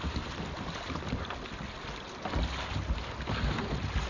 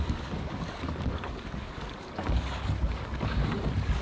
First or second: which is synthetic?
second